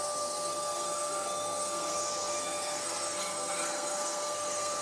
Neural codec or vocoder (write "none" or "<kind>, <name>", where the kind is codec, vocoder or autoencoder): codec, SNAC